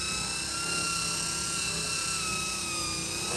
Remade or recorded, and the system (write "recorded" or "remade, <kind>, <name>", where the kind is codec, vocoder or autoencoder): recorded